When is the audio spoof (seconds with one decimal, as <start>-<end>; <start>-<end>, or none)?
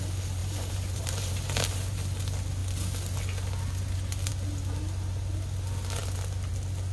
0.4-2.2